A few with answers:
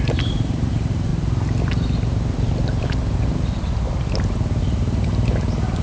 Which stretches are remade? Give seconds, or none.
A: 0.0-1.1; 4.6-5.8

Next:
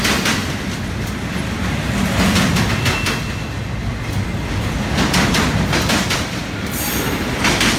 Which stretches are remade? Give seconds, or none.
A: none

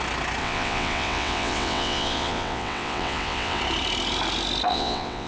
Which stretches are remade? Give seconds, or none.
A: 0.4-3.6; 4.7-5.3

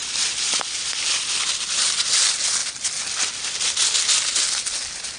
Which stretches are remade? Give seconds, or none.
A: none

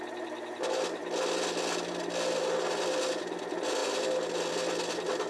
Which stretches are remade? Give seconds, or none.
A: none

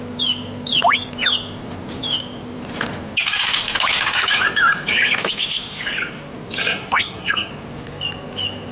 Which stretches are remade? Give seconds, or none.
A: 6.6-7.5